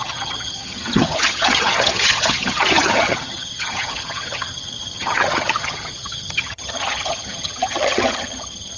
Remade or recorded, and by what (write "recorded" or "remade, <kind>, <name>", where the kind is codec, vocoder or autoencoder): remade, vocoder, HiFi-GAN